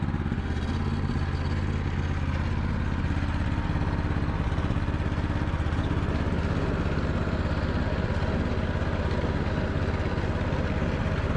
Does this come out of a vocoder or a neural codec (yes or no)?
no